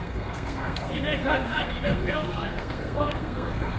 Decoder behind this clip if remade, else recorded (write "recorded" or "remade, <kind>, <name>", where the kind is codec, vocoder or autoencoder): remade, codec, SNAC